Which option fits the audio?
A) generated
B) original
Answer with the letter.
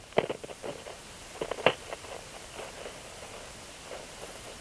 B